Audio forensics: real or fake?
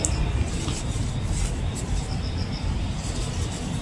real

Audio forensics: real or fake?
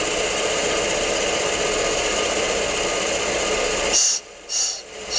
real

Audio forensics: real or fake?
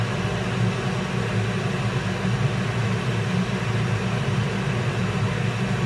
real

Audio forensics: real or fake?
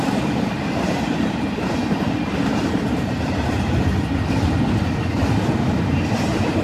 fake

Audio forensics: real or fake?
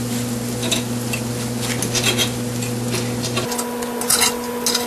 real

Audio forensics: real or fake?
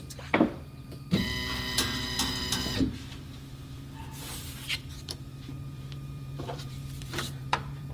fake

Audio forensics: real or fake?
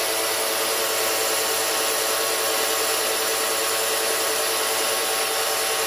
fake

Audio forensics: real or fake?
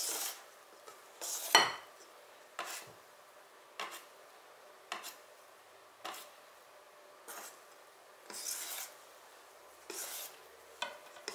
real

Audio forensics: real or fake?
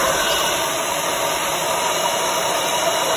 fake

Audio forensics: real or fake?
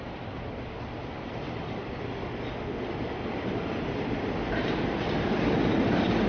real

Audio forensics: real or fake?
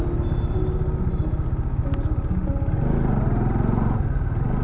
real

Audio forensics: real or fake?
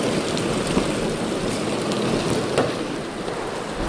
real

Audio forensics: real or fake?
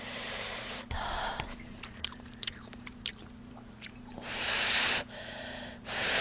fake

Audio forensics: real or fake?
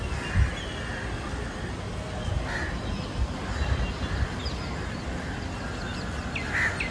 real